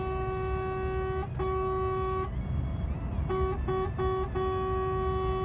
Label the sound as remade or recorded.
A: recorded